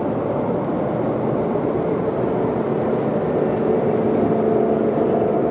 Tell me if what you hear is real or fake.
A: real